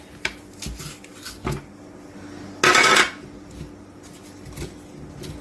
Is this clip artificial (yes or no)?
no